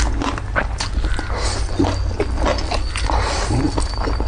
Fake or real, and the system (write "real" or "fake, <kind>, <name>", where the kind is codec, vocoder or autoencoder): real